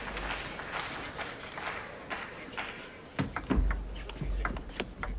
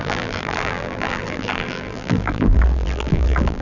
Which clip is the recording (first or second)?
first